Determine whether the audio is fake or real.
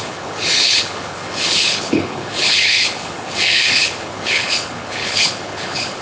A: fake